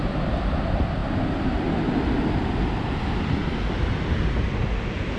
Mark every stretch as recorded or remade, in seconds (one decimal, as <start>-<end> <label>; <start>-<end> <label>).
0.0-5.2 recorded